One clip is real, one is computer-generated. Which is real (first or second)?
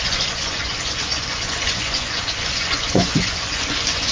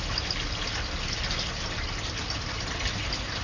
second